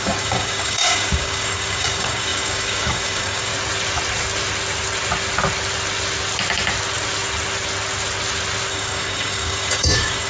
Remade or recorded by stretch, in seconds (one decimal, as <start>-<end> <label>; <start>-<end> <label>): 0.0-3.5 remade; 3.5-8.7 recorded; 8.7-10.3 remade